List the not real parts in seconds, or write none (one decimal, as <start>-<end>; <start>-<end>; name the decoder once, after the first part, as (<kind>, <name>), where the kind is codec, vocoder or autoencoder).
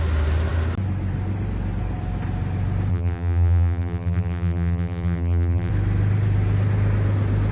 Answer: 2.9-5.7 (vocoder, BigVGAN v2)